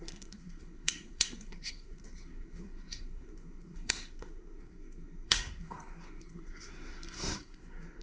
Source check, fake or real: fake